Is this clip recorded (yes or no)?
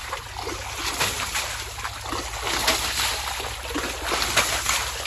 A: yes